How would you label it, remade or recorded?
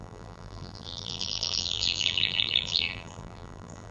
remade